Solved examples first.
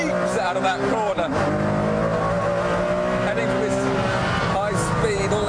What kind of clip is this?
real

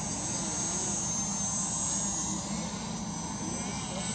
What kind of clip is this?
real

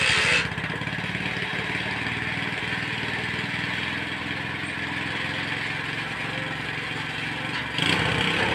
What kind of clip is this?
real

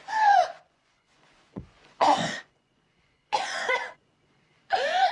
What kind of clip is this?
fake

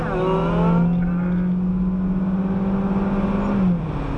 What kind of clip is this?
real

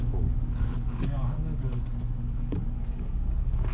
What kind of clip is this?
fake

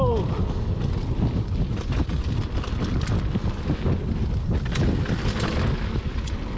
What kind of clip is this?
real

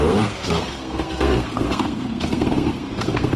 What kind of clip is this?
fake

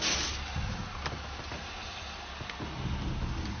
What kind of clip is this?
real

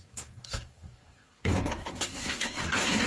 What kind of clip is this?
fake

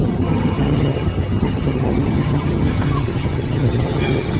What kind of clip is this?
fake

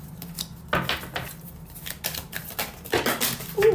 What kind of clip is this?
real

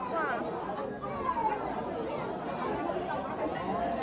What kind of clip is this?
real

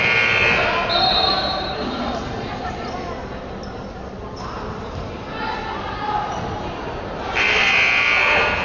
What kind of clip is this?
real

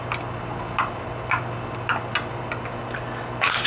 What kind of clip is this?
real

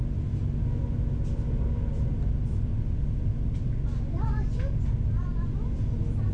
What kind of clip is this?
real